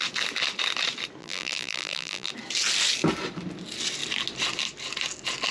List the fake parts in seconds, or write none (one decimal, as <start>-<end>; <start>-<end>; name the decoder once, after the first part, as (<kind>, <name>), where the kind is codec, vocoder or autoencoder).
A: 1.2-2.3 (vocoder, BigVGAN v2)